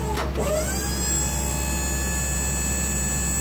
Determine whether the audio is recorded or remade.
recorded